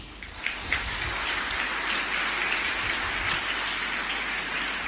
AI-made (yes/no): no